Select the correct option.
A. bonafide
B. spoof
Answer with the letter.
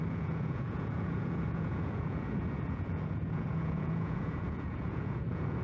B